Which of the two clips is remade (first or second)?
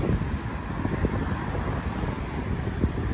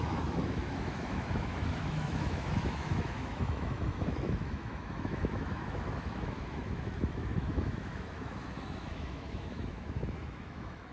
second